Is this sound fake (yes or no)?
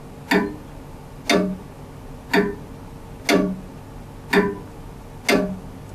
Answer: no